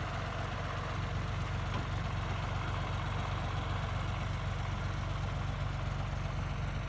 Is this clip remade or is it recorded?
recorded